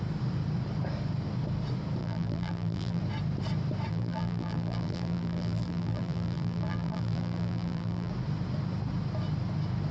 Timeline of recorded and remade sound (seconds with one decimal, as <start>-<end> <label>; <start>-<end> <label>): 0.0-2.0 recorded; 2.0-3.0 remade; 3.0-3.9 recorded; 3.9-8.1 remade; 8.1-9.9 recorded